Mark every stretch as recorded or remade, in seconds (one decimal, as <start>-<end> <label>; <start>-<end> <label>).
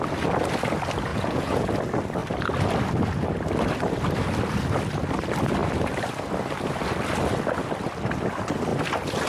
0.0-1.1 recorded; 1.1-1.7 remade; 1.7-9.3 recorded